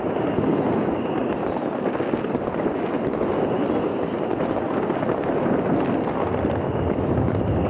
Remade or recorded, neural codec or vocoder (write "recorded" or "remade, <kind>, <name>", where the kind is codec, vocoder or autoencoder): recorded